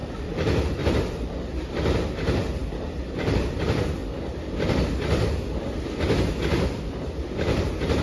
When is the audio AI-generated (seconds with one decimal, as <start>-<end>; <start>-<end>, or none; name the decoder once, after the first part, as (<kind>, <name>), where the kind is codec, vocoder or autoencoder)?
0.0-4.0 (vocoder, BigVGAN v2); 6.6-8.0